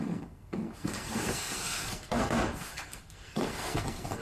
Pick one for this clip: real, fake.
fake